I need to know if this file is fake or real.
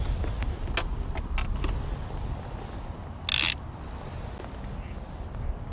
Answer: real